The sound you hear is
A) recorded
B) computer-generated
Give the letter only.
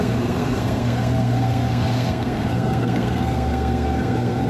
B